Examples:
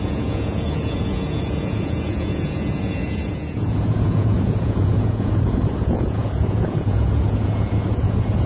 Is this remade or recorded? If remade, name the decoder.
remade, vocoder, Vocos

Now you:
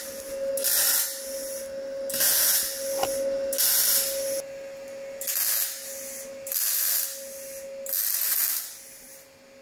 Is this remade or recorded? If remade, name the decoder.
recorded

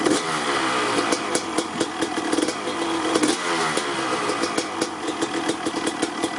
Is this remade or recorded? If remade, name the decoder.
recorded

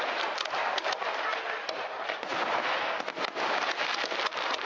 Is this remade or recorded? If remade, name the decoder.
recorded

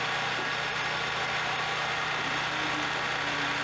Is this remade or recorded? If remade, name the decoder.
recorded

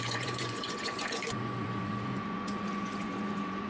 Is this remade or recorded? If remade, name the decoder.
remade, vocoder, Vocos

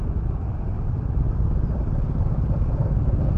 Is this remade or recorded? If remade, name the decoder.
recorded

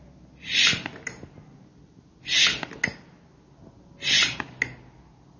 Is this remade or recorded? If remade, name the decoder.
recorded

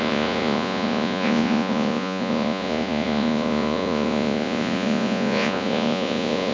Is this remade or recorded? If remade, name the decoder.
remade, vocoder, Vocos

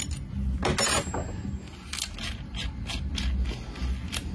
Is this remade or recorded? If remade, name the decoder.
recorded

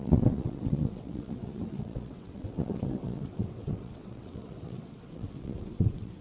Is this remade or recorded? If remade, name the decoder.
remade, vocoder, WaveNeXt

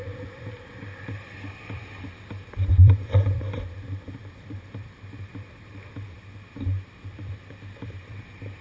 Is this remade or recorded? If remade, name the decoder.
remade, vocoder, BigVGAN v2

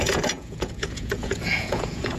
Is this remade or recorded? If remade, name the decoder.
remade, vocoder, Vocos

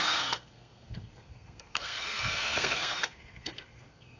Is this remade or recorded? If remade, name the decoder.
remade, codec, SNAC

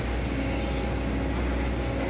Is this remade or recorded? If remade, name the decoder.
recorded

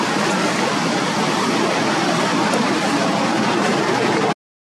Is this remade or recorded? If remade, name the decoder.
recorded